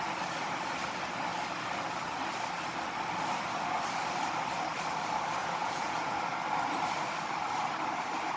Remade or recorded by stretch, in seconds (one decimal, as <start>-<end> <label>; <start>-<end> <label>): 0.0-5.4 recorded; 5.4-6.2 remade; 6.2-8.4 recorded